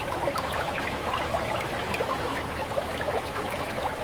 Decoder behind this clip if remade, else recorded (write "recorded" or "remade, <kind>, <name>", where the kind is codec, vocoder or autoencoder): remade, autoencoder, DAC-VAE